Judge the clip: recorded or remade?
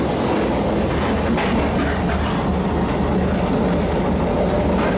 recorded